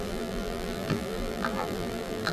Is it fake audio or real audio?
fake